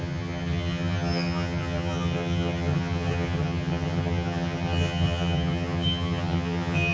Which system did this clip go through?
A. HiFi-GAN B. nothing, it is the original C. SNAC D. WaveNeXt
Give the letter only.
A